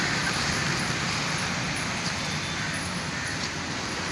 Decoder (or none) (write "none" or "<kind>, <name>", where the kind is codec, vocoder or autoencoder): none